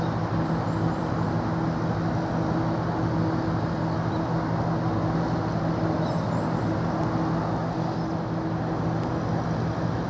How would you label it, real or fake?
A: real